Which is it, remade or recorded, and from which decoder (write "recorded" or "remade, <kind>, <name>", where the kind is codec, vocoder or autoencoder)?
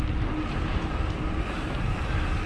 recorded